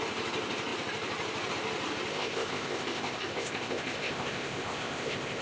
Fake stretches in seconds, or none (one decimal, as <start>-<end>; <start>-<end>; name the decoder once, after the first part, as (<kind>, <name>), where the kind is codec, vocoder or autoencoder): 2.1-5.4 (codec, ZipCodec)